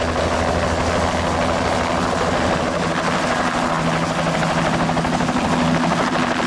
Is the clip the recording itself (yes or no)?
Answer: yes